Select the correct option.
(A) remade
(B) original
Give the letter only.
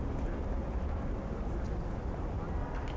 B